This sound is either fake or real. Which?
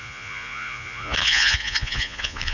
fake